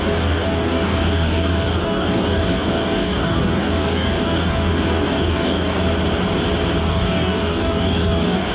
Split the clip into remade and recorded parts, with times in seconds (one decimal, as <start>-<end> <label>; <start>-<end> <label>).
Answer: 0.0-5.8 remade; 5.8-6.8 recorded; 6.8-8.5 remade